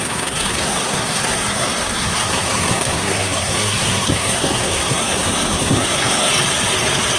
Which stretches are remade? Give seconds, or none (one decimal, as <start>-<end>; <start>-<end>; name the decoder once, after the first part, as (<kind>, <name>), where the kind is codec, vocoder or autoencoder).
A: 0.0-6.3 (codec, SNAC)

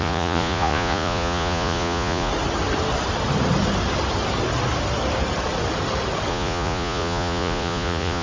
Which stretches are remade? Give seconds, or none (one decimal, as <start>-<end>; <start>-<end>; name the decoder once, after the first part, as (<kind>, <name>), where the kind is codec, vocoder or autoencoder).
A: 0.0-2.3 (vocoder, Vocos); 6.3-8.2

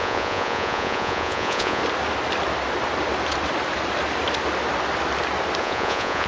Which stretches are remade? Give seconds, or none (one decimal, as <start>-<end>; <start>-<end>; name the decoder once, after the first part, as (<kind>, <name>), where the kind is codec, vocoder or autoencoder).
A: 0.0-1.8 (vocoder, Vocos); 5.6-6.3